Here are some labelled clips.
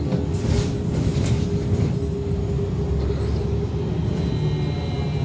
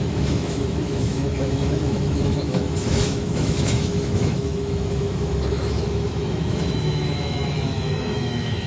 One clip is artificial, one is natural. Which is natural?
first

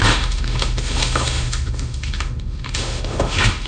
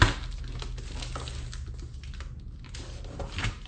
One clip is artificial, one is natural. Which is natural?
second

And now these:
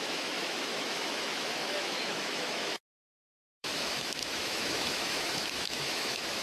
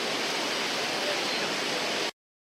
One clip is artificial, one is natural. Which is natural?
second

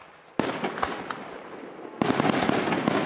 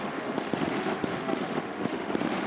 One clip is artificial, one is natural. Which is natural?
first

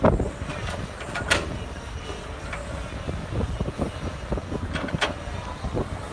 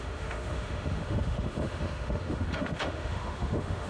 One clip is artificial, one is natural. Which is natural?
first